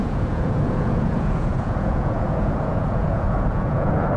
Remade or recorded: remade